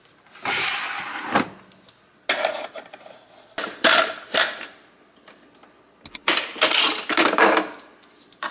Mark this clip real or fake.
real